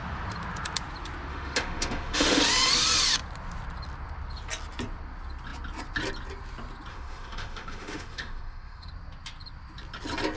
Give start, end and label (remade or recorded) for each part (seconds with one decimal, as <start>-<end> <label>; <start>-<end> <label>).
0.0-1.3 recorded; 1.3-2.4 remade; 2.4-6.9 recorded; 6.9-8.9 remade; 8.9-10.4 recorded